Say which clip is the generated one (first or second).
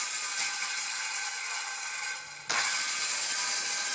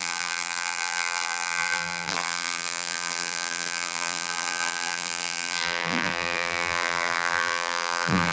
second